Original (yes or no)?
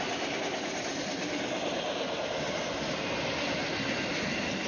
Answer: yes